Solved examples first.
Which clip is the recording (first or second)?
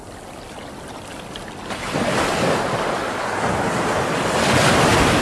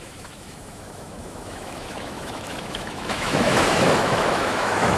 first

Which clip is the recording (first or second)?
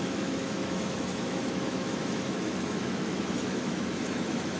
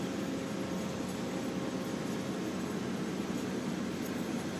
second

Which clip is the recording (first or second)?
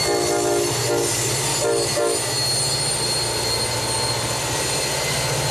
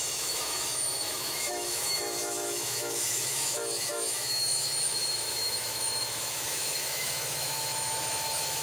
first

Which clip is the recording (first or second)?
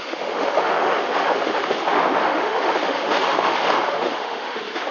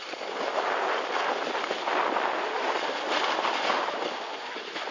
second